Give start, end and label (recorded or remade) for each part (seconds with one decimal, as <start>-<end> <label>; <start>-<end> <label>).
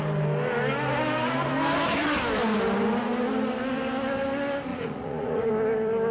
0.0-4.7 recorded; 4.7-5.5 remade; 5.5-6.1 recorded